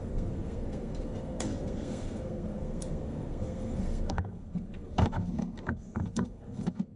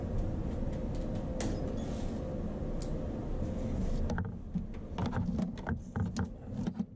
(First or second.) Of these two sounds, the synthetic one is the first